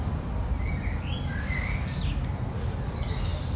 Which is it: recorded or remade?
recorded